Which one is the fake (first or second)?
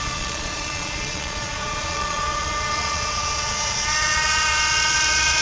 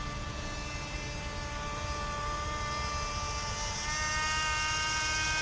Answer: first